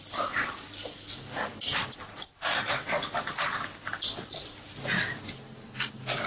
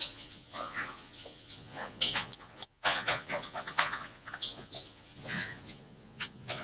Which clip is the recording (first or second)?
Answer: first